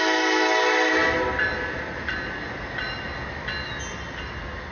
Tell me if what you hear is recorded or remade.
recorded